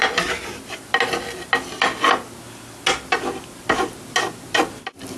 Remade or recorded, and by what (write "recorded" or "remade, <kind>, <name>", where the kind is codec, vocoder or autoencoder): recorded